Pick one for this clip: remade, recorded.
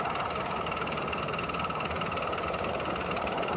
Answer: remade